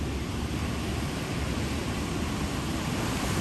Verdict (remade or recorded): recorded